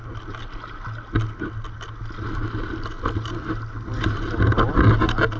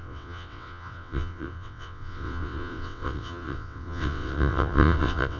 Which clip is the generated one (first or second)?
second